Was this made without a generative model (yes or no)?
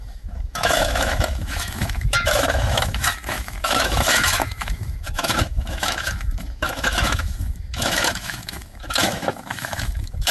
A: no